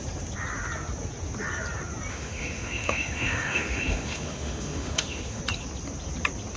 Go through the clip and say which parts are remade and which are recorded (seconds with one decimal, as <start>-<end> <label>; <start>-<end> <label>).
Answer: 0.0-2.1 recorded; 2.1-5.4 remade; 5.4-6.6 recorded